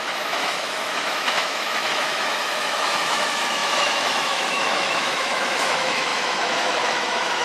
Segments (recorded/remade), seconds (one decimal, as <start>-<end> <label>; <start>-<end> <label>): 0.0-7.4 remade